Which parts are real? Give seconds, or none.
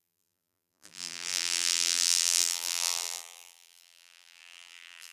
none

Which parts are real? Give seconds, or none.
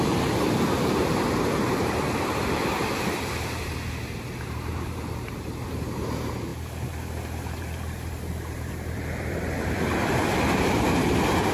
6.5-8.3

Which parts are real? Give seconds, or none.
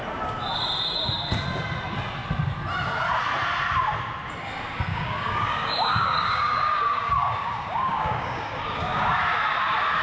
0.0-4.9; 9.2-10.0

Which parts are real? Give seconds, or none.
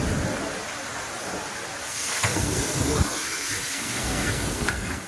0.0-1.8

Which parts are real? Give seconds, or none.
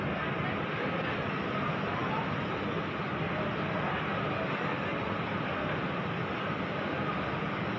0.0-7.8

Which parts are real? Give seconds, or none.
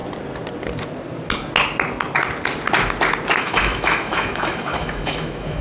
0.0-3.4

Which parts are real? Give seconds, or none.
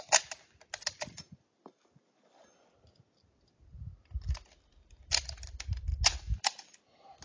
0.0-7.2